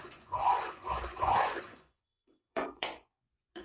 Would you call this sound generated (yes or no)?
yes